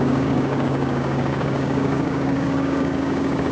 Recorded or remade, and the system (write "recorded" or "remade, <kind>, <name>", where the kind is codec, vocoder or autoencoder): remade, codec, DAC